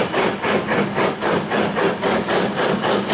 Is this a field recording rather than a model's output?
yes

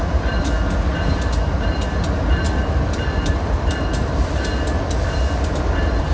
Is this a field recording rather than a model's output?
yes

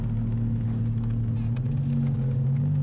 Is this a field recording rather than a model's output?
yes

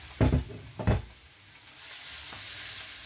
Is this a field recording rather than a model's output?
yes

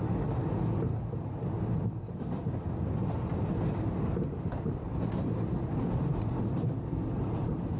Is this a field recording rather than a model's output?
yes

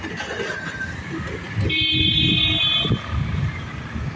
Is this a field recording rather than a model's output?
yes